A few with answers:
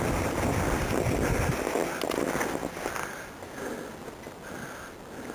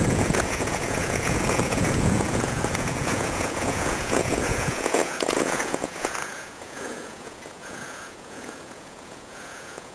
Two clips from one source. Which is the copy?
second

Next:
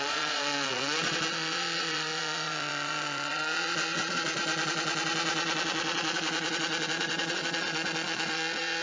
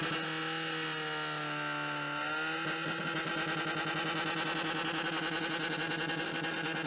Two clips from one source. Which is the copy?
first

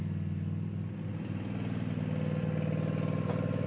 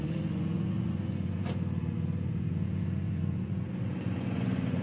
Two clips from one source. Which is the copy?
second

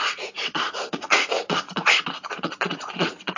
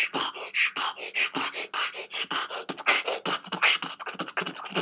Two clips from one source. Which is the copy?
first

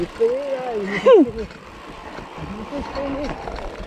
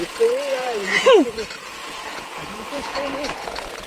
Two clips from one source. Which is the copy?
second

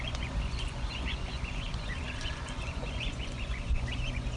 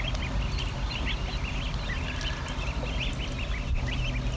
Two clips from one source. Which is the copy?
first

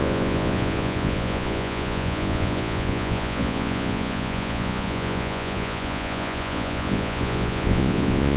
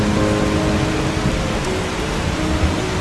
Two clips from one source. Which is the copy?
first